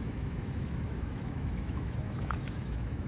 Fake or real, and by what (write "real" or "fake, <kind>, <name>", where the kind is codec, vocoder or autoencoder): fake, autoencoder, DAC-VAE